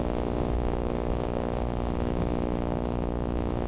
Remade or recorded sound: remade